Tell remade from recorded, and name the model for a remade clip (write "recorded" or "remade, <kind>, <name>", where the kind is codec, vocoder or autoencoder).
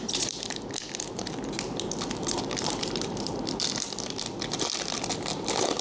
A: remade, vocoder, BigVGAN v2